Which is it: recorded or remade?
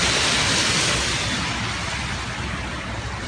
recorded